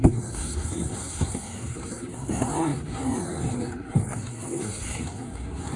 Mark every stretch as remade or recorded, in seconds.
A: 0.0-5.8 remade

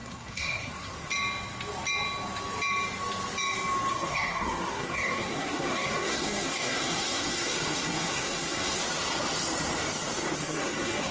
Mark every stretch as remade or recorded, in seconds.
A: 0.0-1.1 remade; 1.1-3.9 recorded; 3.9-8.8 remade; 8.8-10.4 recorded; 10.4-11.1 remade

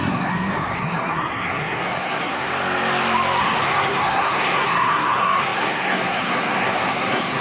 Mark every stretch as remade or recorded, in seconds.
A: 0.0-2.5 remade; 2.5-3.4 recorded; 3.4-7.4 remade